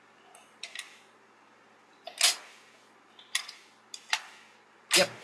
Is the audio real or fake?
real